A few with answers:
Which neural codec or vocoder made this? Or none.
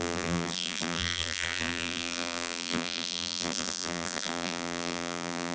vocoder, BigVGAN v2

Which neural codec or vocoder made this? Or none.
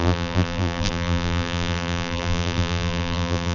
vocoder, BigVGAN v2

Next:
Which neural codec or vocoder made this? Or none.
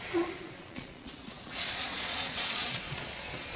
vocoder, Vocos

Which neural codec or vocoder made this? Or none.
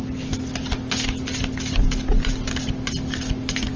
none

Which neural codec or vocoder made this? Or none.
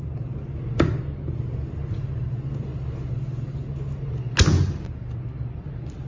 none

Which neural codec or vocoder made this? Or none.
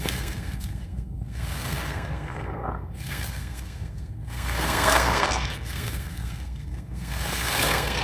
codec, SNAC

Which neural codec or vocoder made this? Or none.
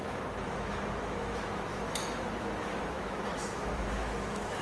autoencoder, DAC-VAE